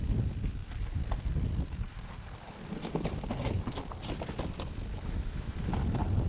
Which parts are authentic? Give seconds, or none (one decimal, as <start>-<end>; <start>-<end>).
0.0-4.9; 5.7-6.3